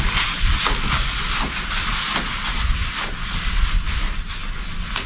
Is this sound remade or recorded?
recorded